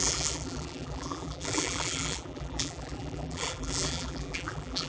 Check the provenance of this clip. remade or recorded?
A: remade